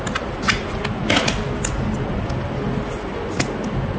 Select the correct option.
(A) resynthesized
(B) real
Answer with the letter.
B